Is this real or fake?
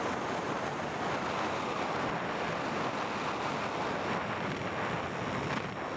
real